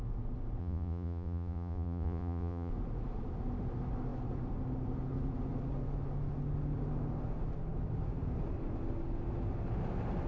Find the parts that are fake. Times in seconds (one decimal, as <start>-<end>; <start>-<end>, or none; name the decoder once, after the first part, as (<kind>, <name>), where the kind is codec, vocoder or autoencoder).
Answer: 0.6-2.7 (vocoder, Vocos)